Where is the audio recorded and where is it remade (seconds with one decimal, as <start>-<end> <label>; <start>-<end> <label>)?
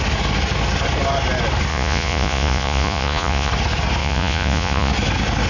0.0-1.7 recorded; 1.7-3.5 remade; 3.5-4.0 recorded; 4.0-4.9 remade; 4.9-5.5 recorded